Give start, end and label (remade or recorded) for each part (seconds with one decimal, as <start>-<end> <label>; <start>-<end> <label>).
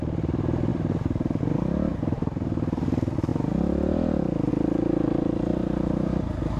0.0-0.7 recorded; 0.7-1.4 remade; 1.4-1.9 recorded; 1.9-2.9 remade; 2.9-5.5 recorded; 5.5-6.1 remade; 6.1-6.6 recorded